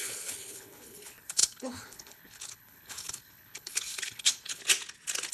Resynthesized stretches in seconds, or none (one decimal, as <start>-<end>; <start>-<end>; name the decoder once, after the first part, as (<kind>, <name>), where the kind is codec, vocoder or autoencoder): 0.0-4.6 (codec, HILCodec)